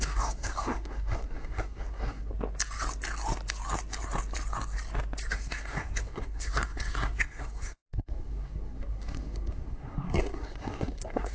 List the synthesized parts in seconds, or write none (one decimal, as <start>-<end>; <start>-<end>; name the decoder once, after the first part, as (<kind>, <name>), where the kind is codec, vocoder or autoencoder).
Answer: 0.0-2.3 (codec, SNAC); 5.3-11.3